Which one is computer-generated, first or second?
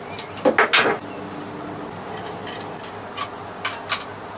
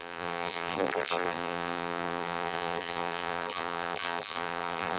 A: second